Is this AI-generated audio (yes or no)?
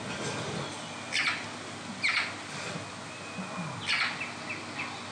no